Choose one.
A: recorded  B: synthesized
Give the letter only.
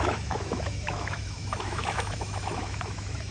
B